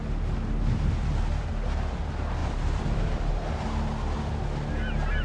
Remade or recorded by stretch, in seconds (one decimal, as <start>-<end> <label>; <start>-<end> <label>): 0.0-1.5 remade; 1.5-2.4 recorded; 2.4-3.3 remade; 3.3-5.2 recorded